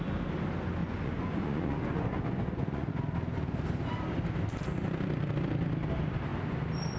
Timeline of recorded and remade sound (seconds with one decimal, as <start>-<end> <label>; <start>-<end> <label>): 0.0-0.8 recorded; 0.8-2.9 remade; 2.9-7.0 recorded